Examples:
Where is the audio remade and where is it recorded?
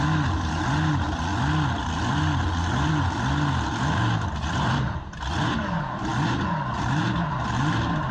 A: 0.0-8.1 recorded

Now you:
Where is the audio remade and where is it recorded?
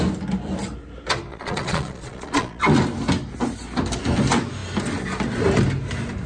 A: 0.0-1.3 recorded; 1.3-2.6 remade; 2.6-6.3 recorded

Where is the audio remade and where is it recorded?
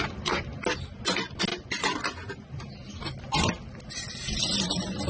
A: 0.0-5.1 recorded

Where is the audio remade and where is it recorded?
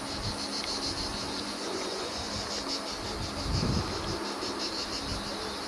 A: 0.0-1.1 recorded; 1.1-2.3 remade; 2.3-5.7 recorded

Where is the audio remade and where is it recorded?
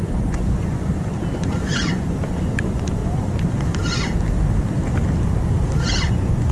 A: 0.0-0.9 remade; 0.9-1.4 recorded; 1.4-3.0 remade; 3.0-6.1 recorded; 6.1-6.5 remade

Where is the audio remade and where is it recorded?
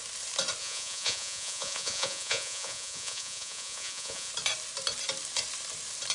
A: 0.0-0.6 recorded; 0.6-4.3 remade; 4.3-6.1 recorded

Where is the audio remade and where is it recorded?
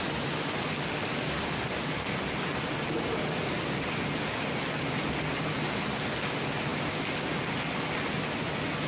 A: 0.0-8.9 recorded